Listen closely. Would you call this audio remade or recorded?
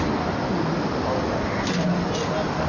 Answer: recorded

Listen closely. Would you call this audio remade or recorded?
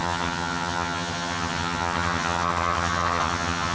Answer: remade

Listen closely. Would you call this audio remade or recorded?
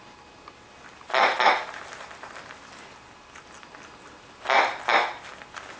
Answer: recorded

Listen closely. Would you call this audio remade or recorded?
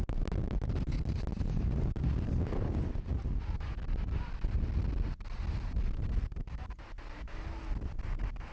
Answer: recorded